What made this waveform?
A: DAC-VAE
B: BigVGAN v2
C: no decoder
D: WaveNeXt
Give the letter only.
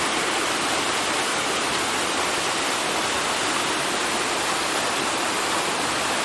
C